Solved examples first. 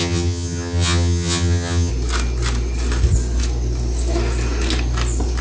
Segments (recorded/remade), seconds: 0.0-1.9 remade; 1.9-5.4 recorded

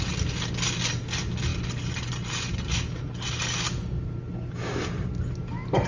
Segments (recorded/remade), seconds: 0.0-5.9 recorded

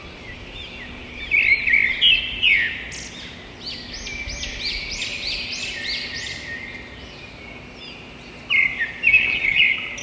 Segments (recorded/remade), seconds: 0.0-9.1 recorded; 9.1-9.6 remade; 9.6-10.0 recorded

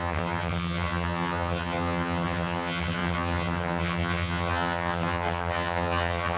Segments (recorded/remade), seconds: 0.0-6.4 remade

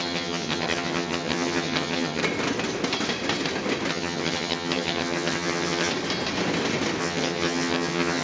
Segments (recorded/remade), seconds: 0.0-2.2 remade; 2.2-3.9 recorded; 3.9-5.9 remade; 5.9-7.0 recorded; 7.0-8.2 remade

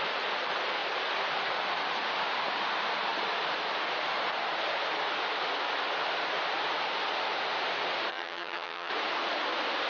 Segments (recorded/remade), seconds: 0.0-8.1 recorded; 8.1-8.9 remade; 8.9-9.9 recorded